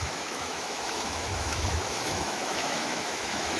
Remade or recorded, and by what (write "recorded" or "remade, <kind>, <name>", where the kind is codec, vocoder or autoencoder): remade, autoencoder, DAC-VAE